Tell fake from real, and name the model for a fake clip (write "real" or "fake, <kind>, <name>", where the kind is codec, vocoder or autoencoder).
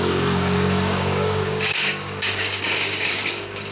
fake, codec, DAC